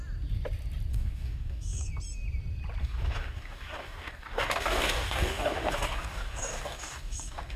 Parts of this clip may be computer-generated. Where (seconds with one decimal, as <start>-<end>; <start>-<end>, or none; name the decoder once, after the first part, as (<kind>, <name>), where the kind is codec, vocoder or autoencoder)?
0.9-1.9 (codec, DAC); 2.8-7.6